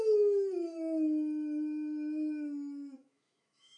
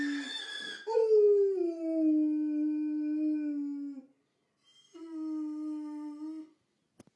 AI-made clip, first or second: first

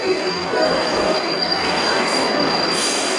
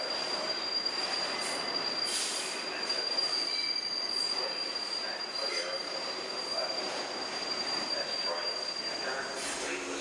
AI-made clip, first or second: first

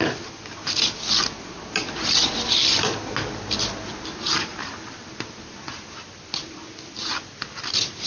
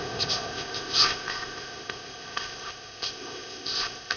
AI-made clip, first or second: second